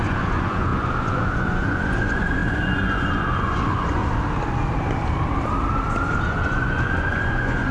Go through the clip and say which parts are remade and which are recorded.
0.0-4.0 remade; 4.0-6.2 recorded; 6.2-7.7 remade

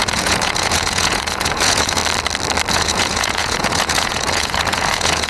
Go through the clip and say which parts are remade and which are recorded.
0.0-2.0 remade; 2.0-2.7 recorded; 2.7-5.3 remade

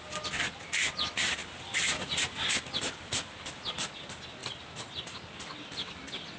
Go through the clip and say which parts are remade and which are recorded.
0.0-6.4 recorded

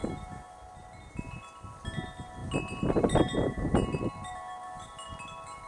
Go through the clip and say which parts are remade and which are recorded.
0.0-5.7 recorded

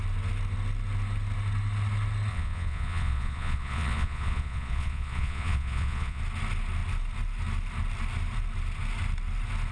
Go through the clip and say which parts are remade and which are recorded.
0.0-2.3 recorded; 2.3-6.2 remade; 6.2-9.7 recorded

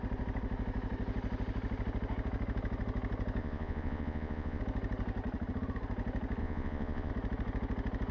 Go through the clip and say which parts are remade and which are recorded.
0.0-3.4 recorded; 3.4-4.6 remade; 4.6-6.4 recorded; 6.4-7.1 remade; 7.1-8.1 recorded

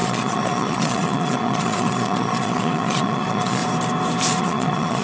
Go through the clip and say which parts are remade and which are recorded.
0.0-3.6 remade; 3.6-4.4 recorded; 4.4-5.0 remade